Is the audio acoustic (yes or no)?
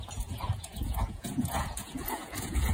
no